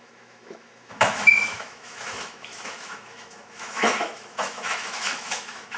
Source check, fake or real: fake